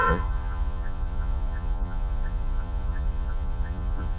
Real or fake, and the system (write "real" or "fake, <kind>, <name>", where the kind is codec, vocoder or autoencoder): fake, vocoder, Vocos